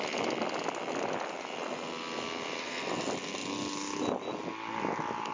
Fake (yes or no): no